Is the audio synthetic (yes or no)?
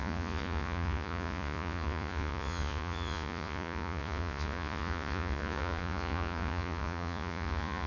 yes